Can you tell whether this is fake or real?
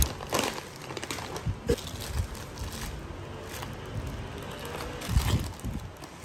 real